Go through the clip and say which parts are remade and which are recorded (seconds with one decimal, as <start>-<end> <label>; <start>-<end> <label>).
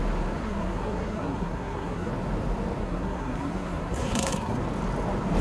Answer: 0.0-0.4 recorded; 0.4-2.1 remade; 2.1-2.8 recorded; 2.8-4.6 remade; 4.6-5.4 recorded